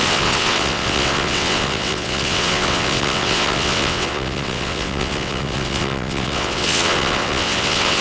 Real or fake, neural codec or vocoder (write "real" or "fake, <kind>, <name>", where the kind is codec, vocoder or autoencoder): fake, vocoder, WaveNeXt